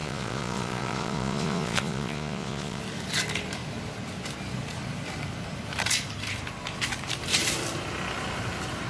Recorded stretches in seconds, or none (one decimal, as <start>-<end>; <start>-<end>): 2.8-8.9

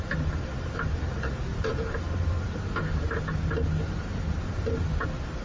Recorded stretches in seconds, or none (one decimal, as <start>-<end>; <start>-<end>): 0.0-5.4

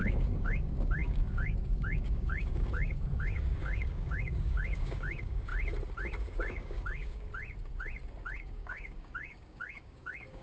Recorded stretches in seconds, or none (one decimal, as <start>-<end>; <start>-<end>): 5.5-6.2; 7.3-8.4